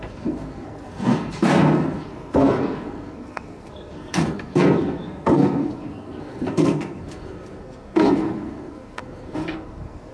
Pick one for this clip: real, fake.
fake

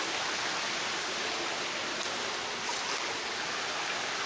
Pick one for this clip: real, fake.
real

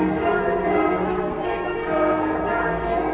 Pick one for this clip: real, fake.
fake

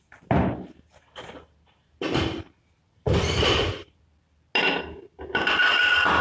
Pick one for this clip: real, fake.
real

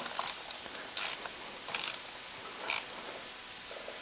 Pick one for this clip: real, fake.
real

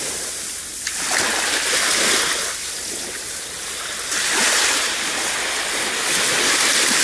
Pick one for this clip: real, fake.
real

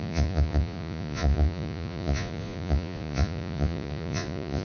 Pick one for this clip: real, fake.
fake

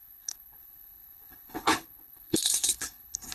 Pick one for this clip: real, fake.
fake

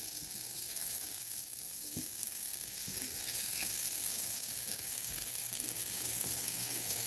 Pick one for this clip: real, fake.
fake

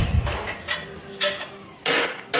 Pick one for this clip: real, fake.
real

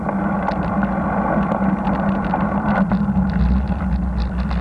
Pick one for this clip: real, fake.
real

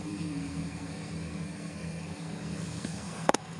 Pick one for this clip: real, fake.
fake